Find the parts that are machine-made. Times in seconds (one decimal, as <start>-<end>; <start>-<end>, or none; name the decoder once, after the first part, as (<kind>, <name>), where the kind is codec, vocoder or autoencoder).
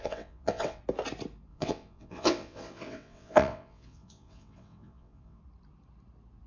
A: 0.0-0.8 (vocoder, WaveNeXt); 1.5-5.4